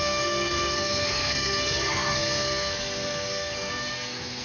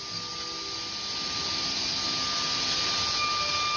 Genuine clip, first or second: second